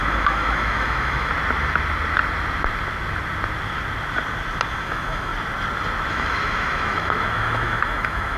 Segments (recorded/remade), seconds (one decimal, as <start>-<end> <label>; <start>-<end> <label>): 0.0-1.3 remade; 1.3-4.7 recorded; 4.7-5.3 remade; 5.3-6.1 recorded; 6.1-8.4 remade